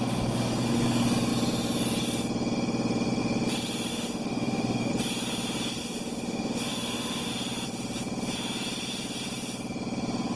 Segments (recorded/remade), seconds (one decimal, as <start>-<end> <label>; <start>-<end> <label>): 0.0-3.9 recorded; 3.9-4.9 remade; 4.9-5.8 recorded; 5.8-7.3 remade; 7.3-10.4 recorded